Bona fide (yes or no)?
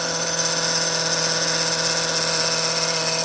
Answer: yes